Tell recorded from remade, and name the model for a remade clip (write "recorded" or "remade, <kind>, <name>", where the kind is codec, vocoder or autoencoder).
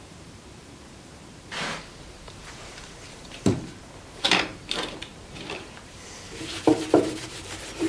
remade, vocoder, BigVGAN v2